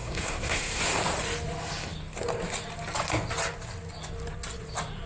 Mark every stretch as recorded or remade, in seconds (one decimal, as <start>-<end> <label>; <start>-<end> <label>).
0.0-0.8 remade; 0.8-5.1 recorded